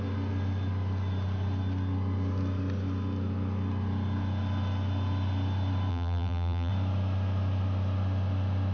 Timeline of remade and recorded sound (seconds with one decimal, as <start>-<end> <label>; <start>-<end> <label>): 0.0-5.9 recorded; 5.9-6.7 remade; 6.7-8.7 recorded